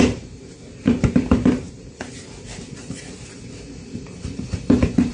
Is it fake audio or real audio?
fake